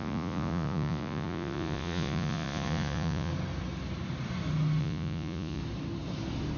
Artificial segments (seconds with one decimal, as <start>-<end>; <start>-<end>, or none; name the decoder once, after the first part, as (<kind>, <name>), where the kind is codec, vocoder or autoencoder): 0.0-3.3 (vocoder, Vocos); 4.8-5.6